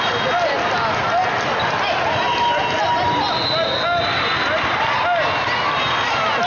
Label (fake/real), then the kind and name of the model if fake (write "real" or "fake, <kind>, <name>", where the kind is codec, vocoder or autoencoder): real